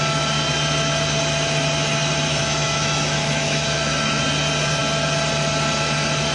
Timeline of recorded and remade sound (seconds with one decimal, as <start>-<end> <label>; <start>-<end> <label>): 0.0-2.3 recorded; 2.3-4.2 remade; 4.2-6.3 recorded